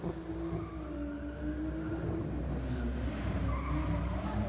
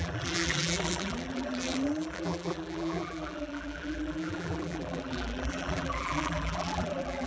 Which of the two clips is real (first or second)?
first